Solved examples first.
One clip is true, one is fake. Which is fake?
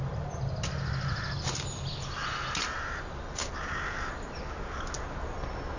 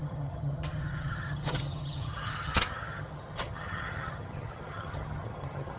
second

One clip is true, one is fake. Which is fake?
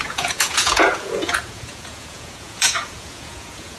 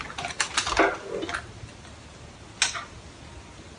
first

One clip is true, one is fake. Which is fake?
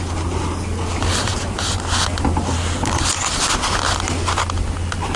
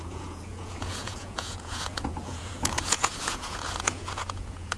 second